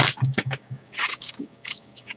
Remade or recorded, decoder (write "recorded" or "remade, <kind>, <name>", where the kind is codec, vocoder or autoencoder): remade, codec, DAC